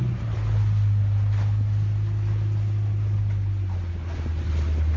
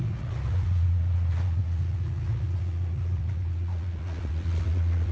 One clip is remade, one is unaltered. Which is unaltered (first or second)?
first